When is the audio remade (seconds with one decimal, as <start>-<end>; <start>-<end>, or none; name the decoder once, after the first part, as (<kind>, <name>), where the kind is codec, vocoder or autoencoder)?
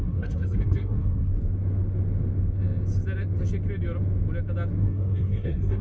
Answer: 0.0-1.3 (codec, SNAC); 4.8-5.8